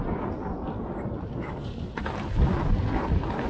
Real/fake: real